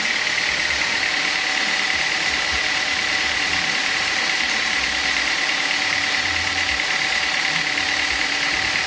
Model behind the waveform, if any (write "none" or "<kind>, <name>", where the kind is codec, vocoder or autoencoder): vocoder, BigVGAN v2